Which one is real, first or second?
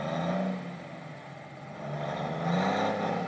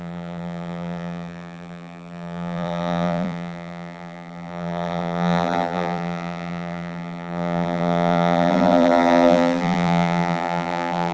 first